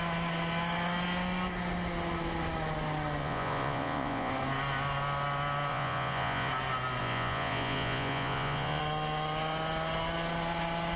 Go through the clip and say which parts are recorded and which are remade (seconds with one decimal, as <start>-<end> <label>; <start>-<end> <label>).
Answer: 0.0-3.2 recorded; 3.2-4.3 remade; 4.3-5.7 recorded; 5.7-6.5 remade; 6.5-7.0 recorded; 7.0-8.8 remade; 8.8-11.0 recorded